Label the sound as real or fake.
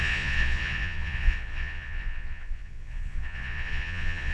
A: fake